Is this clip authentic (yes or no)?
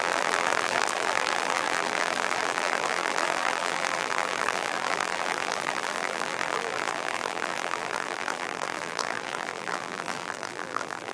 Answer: no